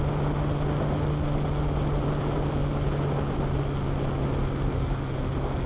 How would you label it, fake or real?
real